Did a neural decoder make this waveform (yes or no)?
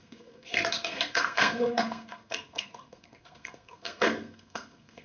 yes